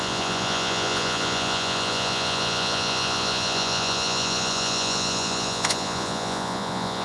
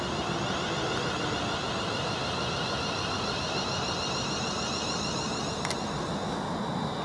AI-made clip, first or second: first